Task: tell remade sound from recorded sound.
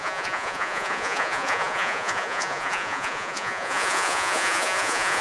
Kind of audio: remade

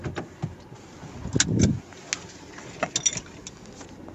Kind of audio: recorded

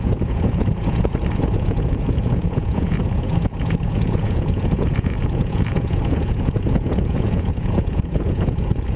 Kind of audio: remade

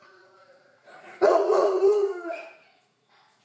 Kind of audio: remade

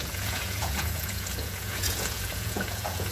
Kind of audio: remade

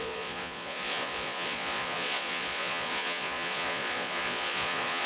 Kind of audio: remade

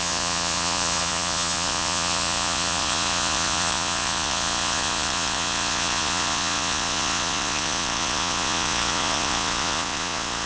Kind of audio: remade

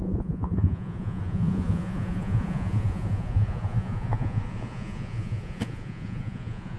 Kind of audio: remade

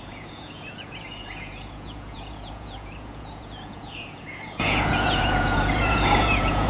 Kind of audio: remade